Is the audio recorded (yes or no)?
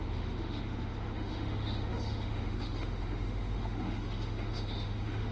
no